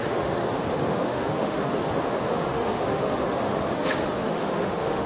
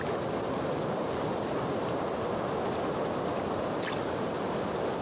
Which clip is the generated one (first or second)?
first